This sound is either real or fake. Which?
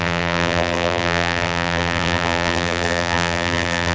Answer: fake